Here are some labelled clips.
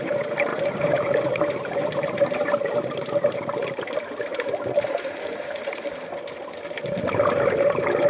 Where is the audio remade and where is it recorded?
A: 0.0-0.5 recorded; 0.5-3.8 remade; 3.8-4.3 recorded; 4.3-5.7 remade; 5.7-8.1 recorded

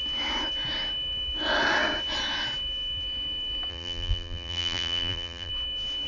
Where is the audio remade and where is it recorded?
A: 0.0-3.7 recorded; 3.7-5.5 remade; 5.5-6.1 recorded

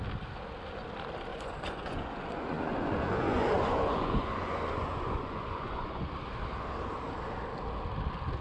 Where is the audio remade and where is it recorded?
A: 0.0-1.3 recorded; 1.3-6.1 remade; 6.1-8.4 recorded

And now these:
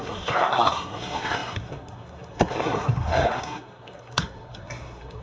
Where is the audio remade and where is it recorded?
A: 0.0-5.2 remade

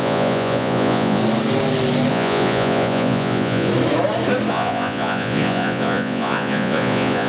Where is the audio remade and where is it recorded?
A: 0.0-1.2 remade; 1.2-2.1 recorded; 2.1-3.7 remade; 3.7-4.5 recorded; 4.5-7.3 remade